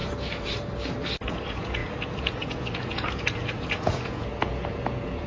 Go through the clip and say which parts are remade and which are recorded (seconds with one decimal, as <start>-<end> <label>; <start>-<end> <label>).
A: 0.0-1.3 recorded; 1.3-5.3 remade